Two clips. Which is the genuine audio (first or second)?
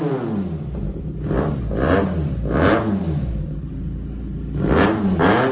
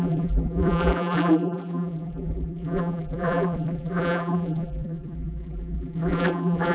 first